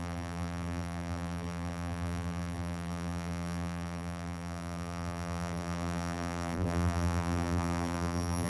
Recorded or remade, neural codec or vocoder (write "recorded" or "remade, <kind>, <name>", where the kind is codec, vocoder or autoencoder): remade, vocoder, BigVGAN v2